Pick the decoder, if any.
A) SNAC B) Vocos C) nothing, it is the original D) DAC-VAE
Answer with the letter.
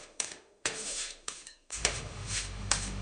D